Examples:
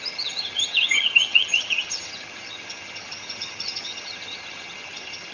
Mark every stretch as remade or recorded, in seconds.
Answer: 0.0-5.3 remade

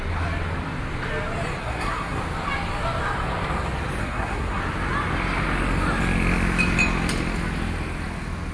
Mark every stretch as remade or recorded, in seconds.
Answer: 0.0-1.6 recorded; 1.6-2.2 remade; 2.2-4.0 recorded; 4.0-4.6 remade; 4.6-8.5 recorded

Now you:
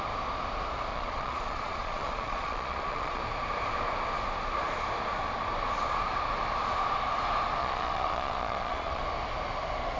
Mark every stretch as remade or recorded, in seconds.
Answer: 0.0-0.9 recorded; 0.9-3.2 remade; 3.2-7.6 recorded; 7.6-9.0 remade; 9.0-10.0 recorded

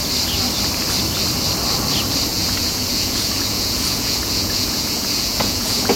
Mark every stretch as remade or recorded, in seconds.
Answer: 0.0-2.3 recorded; 2.3-6.0 remade